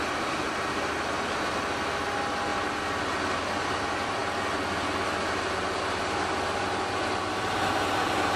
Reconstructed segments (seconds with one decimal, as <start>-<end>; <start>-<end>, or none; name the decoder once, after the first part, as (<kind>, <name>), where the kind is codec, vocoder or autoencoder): none